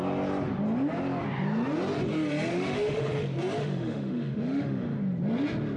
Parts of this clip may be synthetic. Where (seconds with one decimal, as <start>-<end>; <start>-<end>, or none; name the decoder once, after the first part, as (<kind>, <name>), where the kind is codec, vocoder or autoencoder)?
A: 2.5-3.1 (autoencoder, DAC-VAE); 3.6-5.0